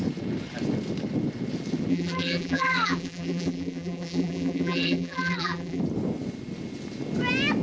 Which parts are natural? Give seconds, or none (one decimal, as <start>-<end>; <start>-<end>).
0.0-1.9; 5.8-7.6